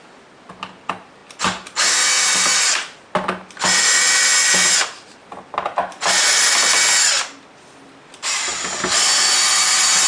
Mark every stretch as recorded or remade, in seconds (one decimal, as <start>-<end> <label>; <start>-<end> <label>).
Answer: 0.0-10.1 recorded